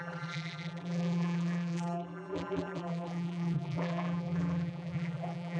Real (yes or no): no